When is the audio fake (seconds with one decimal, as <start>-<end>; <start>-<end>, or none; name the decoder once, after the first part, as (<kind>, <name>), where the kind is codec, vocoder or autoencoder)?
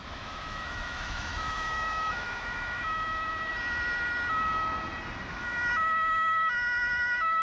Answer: 0.0-3.5 (autoencoder, DAC-VAE); 5.3-7.4